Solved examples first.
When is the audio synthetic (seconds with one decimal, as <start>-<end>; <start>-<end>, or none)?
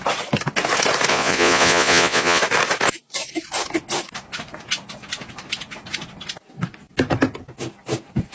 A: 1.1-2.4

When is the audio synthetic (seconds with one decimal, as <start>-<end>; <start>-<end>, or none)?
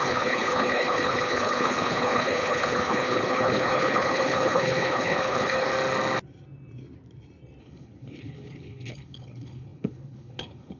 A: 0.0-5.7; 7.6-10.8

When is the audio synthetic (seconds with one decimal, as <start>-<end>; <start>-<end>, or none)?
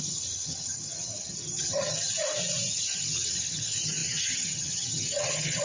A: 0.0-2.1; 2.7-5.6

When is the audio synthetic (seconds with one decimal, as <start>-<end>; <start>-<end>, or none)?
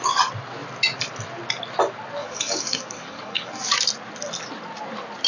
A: 2.2-3.7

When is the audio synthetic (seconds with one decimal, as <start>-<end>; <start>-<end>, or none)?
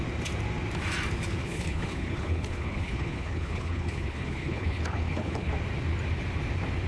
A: 1.4-5.5